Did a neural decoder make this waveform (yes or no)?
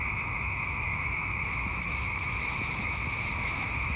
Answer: yes